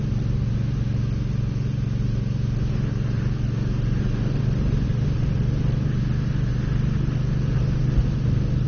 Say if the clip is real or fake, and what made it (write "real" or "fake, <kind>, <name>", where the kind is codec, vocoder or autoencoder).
real